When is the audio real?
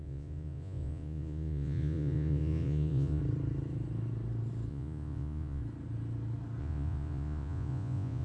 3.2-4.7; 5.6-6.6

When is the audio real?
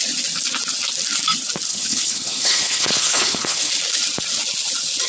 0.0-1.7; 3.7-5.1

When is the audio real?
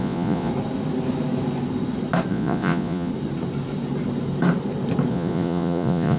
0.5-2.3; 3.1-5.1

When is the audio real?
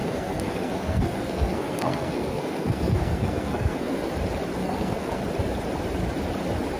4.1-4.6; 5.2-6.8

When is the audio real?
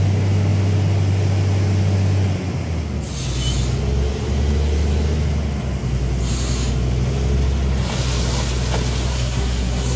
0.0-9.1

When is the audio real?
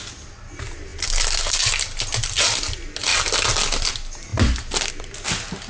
0.0-5.7